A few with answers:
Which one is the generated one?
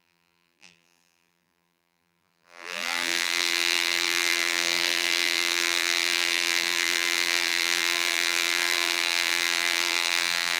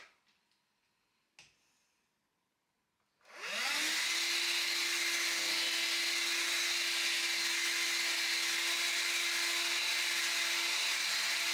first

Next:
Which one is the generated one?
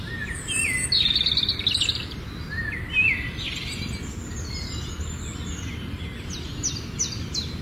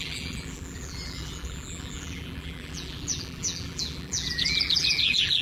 second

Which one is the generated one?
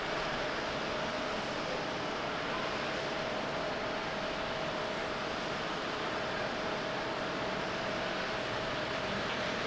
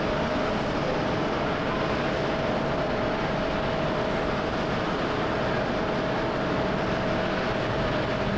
first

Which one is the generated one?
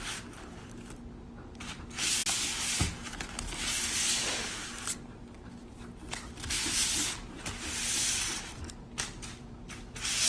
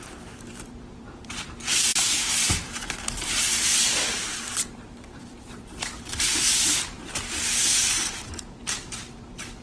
second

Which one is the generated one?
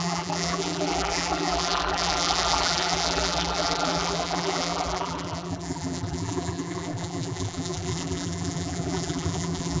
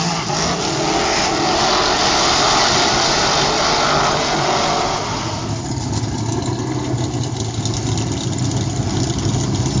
first